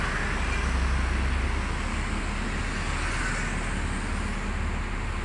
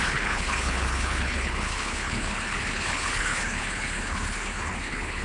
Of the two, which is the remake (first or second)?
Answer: second